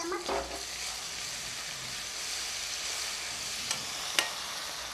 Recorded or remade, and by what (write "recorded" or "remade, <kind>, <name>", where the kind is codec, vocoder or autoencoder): recorded